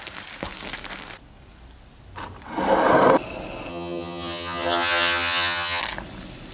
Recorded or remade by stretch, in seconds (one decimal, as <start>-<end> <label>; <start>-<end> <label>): 0.0-3.7 recorded; 3.7-5.8 remade; 5.8-6.5 recorded